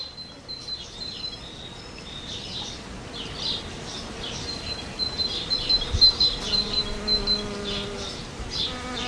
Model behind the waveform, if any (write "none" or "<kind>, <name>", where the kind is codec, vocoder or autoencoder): none